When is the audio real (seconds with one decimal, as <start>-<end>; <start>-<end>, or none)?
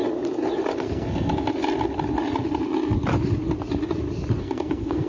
0.0-0.8; 1.3-4.4